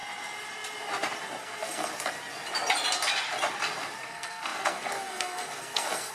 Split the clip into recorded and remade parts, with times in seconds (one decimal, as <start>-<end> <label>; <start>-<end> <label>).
0.0-1.4 recorded; 1.4-1.9 remade; 1.9-4.1 recorded; 4.1-6.1 remade